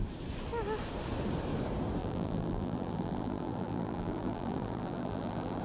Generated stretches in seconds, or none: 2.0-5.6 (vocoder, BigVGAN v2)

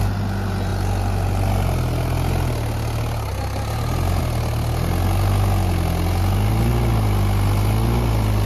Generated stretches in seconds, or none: none

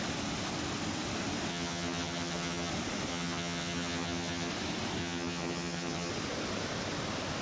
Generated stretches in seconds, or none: 1.5-2.7 (vocoder, HiFi-GAN); 3.1-4.5; 5.0-6.1

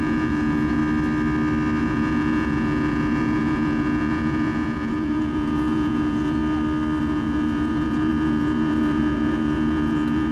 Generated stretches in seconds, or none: 0.0-0.8 (vocoder, Vocos); 1.8-6.4; 7.0-10.3

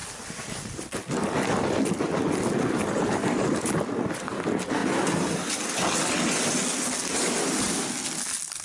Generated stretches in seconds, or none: none